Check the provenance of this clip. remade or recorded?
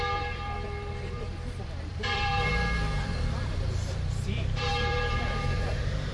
remade